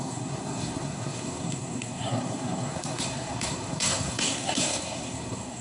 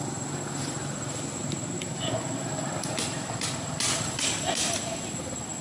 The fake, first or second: first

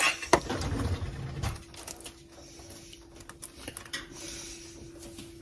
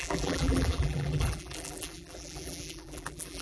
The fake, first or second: second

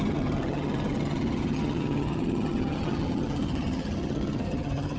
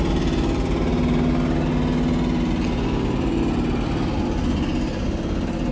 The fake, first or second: first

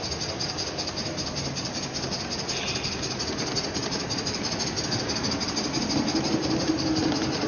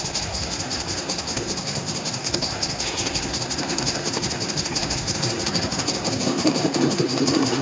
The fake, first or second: second